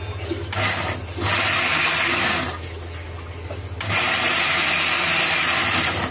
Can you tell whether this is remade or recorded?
recorded